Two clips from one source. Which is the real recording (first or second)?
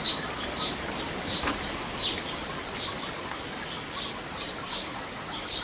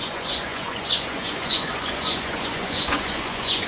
first